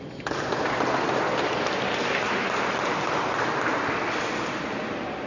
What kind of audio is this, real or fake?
real